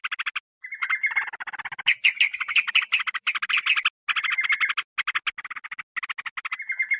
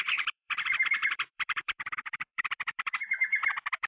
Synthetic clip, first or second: second